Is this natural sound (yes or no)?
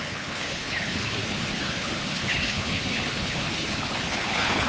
no